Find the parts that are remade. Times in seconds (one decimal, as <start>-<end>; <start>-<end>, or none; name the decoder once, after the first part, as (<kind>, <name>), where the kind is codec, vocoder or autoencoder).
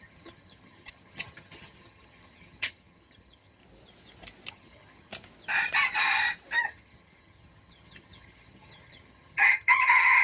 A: 0.0-3.6 (vocoder, HiFi-GAN); 4.5-5.1; 6.6-10.2